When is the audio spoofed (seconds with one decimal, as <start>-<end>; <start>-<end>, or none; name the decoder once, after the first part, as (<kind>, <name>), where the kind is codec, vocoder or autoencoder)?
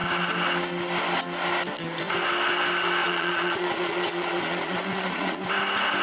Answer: 3.0-5.5 (vocoder, Vocos)